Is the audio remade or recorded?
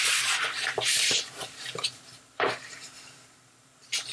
remade